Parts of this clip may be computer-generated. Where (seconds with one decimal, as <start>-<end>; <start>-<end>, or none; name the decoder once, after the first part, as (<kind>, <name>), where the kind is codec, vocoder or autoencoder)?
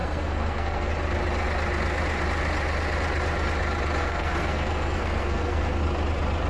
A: 0.0-0.9 (codec, SNAC); 4.0-5.8